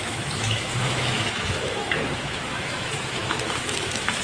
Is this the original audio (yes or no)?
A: no